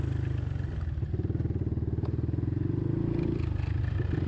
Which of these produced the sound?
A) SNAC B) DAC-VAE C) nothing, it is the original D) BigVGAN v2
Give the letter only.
C